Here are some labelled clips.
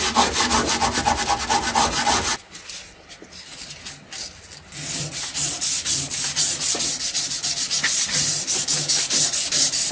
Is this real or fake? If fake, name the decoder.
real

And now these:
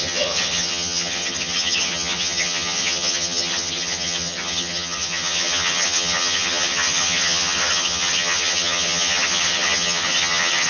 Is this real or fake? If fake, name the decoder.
fake, vocoder, HiFi-GAN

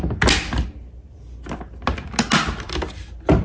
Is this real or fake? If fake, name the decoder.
real